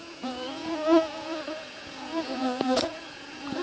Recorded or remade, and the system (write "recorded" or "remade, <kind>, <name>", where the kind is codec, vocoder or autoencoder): remade, vocoder, Vocos